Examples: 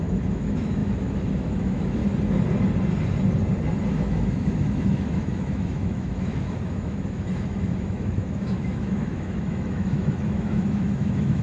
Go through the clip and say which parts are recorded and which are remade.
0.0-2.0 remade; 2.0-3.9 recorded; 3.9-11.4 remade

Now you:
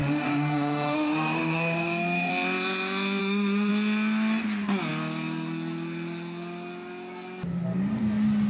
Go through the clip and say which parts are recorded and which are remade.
0.0-2.3 remade; 2.3-3.2 recorded; 3.2-3.7 remade; 3.7-8.5 recorded

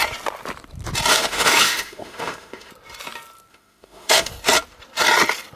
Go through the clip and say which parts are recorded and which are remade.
0.0-1.1 recorded; 1.1-2.7 remade; 2.7-3.5 recorded; 3.5-4.3 remade; 4.3-5.6 recorded

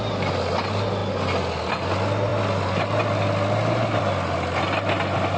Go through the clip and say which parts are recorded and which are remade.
0.0-5.4 recorded

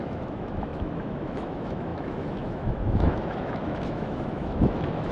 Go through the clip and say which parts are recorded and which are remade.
0.0-5.1 remade